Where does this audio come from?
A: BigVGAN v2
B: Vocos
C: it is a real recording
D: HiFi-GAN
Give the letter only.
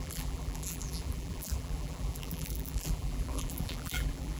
A